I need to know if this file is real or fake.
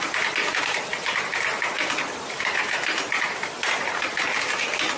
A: real